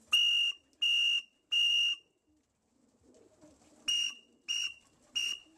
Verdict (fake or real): real